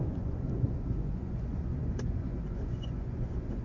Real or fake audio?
fake